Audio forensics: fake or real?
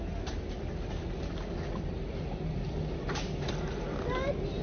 real